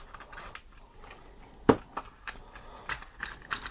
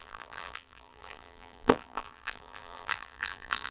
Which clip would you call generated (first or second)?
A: second